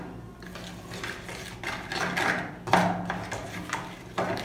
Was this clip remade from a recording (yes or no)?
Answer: no